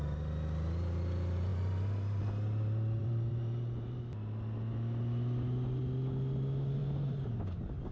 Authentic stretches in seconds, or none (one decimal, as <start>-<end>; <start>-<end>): 0.0-1.5; 2.2-3.0; 4.0-6.8; 7.4-7.9